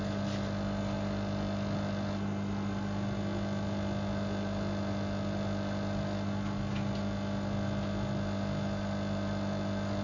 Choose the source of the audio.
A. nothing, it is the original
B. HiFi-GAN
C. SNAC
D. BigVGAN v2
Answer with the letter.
A